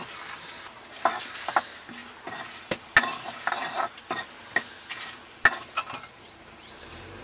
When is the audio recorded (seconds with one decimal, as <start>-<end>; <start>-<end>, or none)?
0.0-7.2